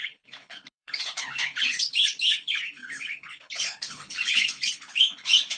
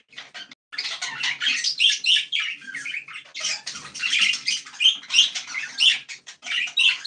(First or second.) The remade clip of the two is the first